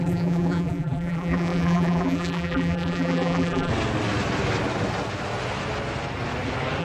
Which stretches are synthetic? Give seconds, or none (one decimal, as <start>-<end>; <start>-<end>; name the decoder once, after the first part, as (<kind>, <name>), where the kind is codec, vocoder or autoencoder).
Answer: 0.0-3.7 (vocoder, BigVGAN v2)